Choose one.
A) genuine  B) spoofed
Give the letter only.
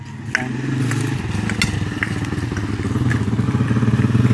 A